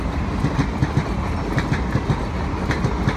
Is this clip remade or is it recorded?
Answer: recorded